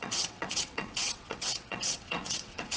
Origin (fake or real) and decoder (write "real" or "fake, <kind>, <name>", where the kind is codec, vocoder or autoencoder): fake, vocoder, WaveNeXt